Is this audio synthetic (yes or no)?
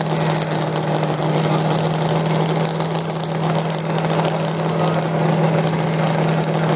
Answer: no